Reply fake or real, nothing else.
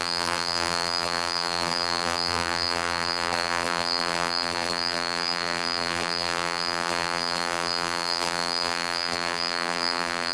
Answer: fake